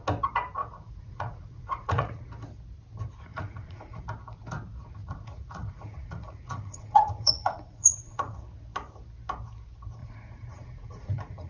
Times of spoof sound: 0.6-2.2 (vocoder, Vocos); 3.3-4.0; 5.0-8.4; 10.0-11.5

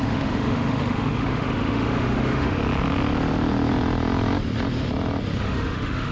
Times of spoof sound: 0.0-2.6 (autoencoder, DAC-VAE); 5.4-6.1

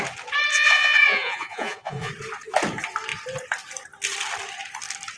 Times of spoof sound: 0.5-2.1 (vocoder, Vocos)

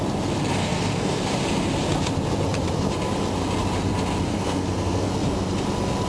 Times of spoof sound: 0.6-1.2 (codec, SNAC); 4.3-5.1

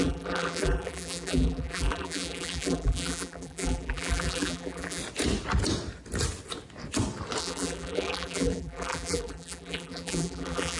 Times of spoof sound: 0.0-5.0 (vocoder, BigVGAN v2); 7.4-10.8